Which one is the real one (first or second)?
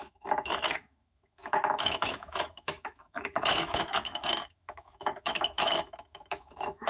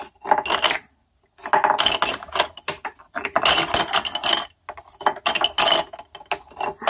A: second